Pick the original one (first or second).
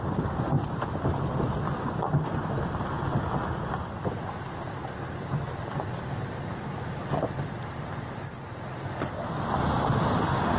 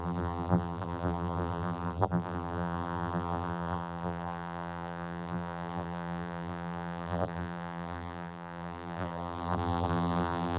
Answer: first